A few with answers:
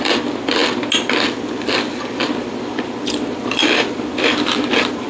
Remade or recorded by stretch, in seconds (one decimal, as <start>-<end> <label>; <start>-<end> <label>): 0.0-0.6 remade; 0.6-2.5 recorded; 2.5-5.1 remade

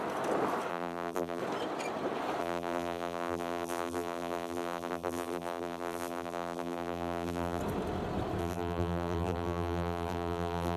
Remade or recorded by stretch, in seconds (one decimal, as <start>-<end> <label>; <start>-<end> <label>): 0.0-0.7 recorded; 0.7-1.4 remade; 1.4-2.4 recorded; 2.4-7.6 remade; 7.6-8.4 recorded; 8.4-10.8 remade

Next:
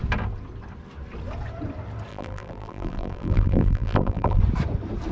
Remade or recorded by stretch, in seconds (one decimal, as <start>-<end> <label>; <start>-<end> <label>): 0.0-2.1 recorded; 2.1-4.4 remade; 4.4-5.1 recorded

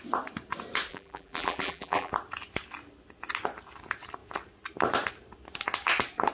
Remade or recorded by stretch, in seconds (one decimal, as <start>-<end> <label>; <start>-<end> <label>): 0.0-0.9 recorded; 0.9-2.1 remade; 2.1-6.3 recorded

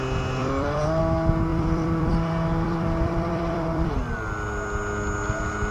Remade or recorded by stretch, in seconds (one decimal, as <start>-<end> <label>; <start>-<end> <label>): 0.0-0.4 recorded; 0.4-1.0 remade; 1.0-1.5 recorded; 1.5-3.9 remade; 3.9-5.7 recorded

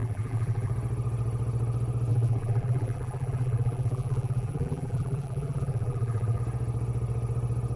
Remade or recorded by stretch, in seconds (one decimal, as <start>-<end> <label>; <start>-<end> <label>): 0.0-0.7 remade; 0.7-2.1 recorded; 2.1-6.4 remade; 6.4-7.8 recorded

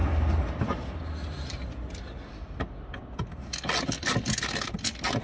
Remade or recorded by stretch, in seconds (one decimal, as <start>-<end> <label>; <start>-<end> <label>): 0.0-5.2 recorded

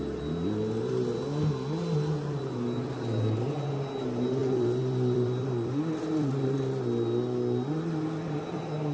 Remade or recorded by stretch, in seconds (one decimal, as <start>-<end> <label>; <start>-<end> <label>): 0.0-4.4 recorded; 4.4-6.8 remade; 6.8-8.9 recorded